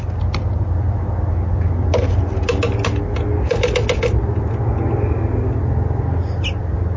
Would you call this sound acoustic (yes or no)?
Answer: yes